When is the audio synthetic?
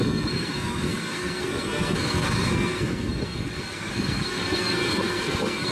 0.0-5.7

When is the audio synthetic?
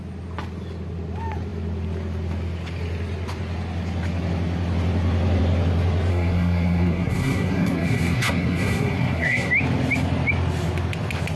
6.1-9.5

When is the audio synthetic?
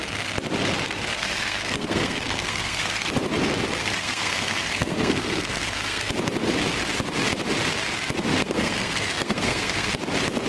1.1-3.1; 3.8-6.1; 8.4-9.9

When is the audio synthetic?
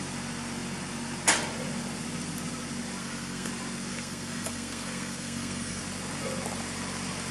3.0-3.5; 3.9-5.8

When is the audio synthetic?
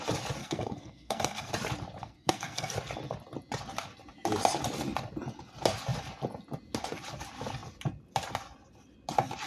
0.4-1.5; 2.0-2.7